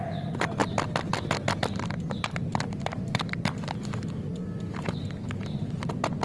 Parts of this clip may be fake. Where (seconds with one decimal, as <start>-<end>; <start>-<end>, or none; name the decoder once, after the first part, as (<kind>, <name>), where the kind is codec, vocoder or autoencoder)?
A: none